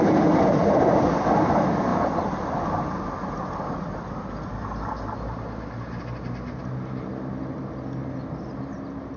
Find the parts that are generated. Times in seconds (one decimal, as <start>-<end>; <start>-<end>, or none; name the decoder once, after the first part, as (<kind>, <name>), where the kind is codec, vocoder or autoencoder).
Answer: none